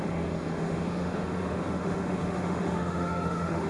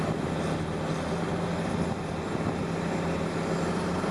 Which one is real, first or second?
second